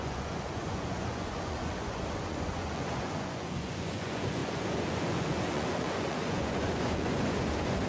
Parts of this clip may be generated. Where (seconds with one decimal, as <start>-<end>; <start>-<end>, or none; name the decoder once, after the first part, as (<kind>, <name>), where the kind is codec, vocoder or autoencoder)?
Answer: 0.0-7.9 (vocoder, Vocos)